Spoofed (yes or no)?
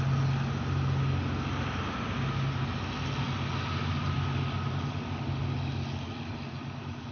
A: no